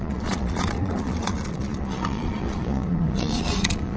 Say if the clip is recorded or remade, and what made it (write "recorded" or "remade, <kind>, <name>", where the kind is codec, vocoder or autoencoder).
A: remade, vocoder, Vocos